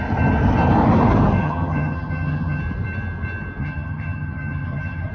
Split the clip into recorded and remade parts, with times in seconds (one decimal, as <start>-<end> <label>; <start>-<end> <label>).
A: 0.0-1.4 recorded; 1.4-2.6 remade; 2.6-3.6 recorded; 3.6-5.1 remade